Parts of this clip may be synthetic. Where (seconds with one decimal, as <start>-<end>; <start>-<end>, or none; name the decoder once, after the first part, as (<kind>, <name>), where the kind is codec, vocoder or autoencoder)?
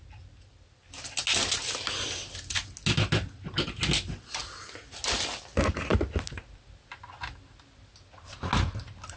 none